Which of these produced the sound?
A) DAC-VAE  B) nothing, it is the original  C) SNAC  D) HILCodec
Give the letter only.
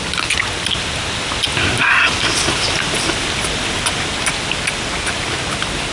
B